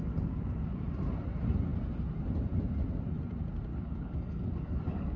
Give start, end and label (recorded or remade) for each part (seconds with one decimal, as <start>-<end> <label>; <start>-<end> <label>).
0.0-3.7 recorded; 3.7-5.2 remade